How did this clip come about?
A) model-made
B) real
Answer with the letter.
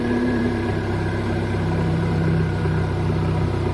A